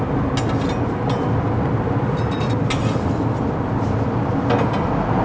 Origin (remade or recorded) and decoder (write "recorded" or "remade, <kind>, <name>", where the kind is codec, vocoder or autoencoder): recorded